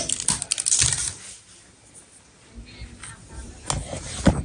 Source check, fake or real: real